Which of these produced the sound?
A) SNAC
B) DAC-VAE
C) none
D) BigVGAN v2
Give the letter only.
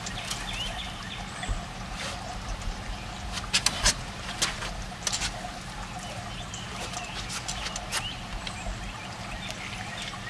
C